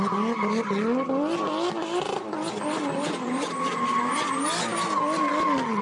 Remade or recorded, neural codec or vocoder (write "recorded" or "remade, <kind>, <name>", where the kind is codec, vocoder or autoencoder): recorded